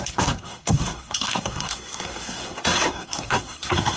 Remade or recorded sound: remade